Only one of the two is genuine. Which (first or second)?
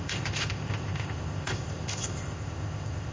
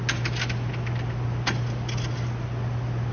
second